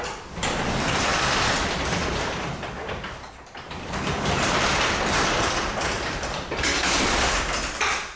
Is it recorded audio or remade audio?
remade